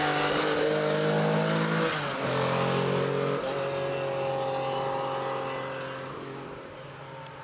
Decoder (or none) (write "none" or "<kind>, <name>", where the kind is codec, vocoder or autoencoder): none